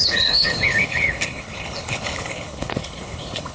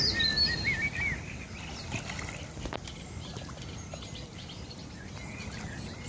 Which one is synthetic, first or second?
first